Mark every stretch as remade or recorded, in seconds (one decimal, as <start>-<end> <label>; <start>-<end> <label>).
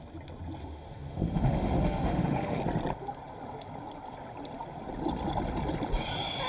0.0-0.6 recorded; 0.6-2.6 remade; 2.6-6.5 recorded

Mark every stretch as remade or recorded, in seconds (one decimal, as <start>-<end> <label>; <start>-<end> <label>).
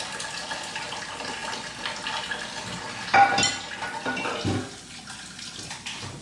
0.0-6.2 recorded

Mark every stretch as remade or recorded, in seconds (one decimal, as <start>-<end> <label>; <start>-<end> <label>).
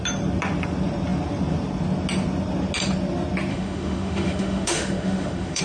0.0-3.5 recorded; 3.5-5.6 remade